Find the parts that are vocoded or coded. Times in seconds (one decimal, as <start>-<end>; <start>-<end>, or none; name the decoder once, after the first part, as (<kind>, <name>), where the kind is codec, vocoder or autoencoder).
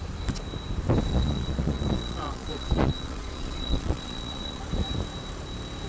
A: 1.1-4.6 (vocoder, Vocos)